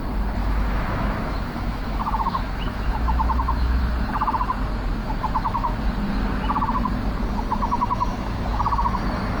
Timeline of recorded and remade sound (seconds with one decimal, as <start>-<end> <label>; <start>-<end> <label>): 0.0-0.4 recorded; 0.4-3.8 remade; 3.8-5.0 recorded; 5.0-5.8 remade; 5.8-8.1 recorded; 8.1-8.6 remade; 8.6-9.4 recorded